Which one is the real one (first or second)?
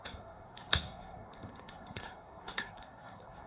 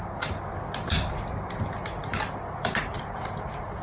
second